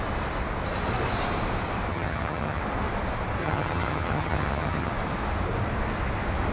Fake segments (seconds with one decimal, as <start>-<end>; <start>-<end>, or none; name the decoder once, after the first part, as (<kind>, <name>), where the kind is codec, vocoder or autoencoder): 1.9-2.6 (vocoder, HiFi-GAN); 3.4-4.9